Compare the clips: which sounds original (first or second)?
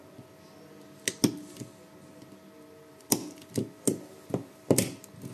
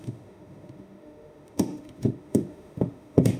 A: first